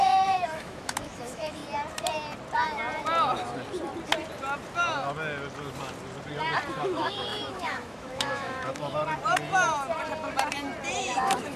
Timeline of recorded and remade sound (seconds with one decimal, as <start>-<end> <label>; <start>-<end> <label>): 0.0-1.6 remade; 1.6-6.7 recorded; 6.7-9.0 remade; 9.0-11.0 recorded; 11.0-11.6 remade